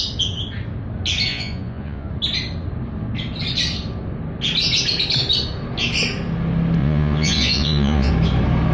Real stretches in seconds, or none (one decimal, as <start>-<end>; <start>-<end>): 0.0-1.3; 2.1-6.8; 8.1-8.7